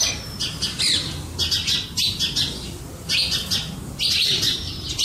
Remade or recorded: recorded